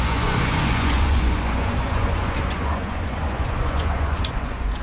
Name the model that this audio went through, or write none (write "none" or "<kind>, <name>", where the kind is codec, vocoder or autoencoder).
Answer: vocoder, Vocos